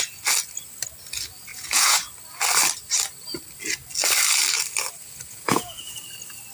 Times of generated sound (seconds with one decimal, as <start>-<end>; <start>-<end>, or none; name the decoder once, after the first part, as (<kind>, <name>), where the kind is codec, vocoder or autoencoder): 1.5-2.1 (vocoder, Vocos); 5.3-6.0